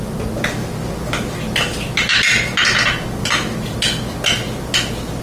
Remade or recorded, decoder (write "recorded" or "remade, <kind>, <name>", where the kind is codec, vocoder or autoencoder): recorded